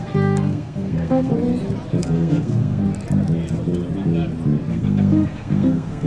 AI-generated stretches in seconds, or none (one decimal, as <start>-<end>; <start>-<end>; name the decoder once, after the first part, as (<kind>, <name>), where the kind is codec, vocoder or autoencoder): 0.0-1.3 (codec, SNAC); 2.0-2.8; 4.7-6.1